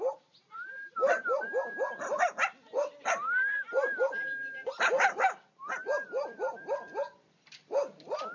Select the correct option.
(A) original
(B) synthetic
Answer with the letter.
A